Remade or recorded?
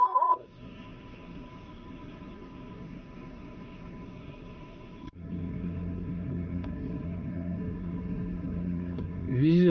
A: remade